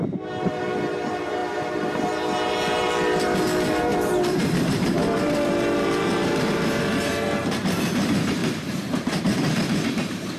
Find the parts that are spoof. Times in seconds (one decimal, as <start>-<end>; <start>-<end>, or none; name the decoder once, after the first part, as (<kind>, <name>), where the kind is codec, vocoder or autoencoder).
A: 0.0-10.4 (vocoder, BigVGAN v2)